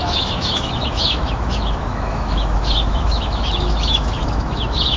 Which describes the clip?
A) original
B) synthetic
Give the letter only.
B